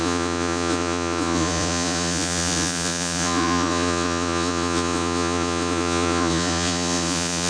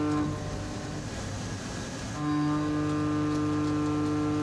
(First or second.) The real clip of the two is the second